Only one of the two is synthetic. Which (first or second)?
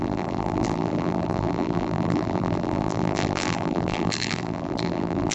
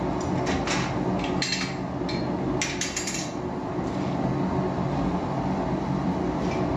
first